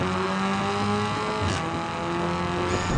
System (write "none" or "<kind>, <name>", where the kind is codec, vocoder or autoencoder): none